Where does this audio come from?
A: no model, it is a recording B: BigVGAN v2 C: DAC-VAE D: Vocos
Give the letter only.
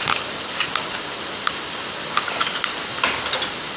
A